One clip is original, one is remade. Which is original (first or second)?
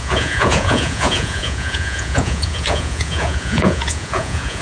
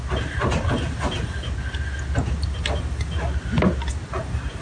second